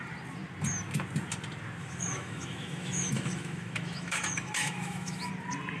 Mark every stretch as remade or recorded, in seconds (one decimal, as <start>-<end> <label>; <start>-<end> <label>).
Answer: 0.0-1.8 recorded; 1.8-5.3 remade; 5.3-5.8 recorded